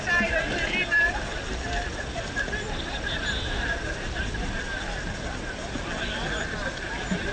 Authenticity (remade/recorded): recorded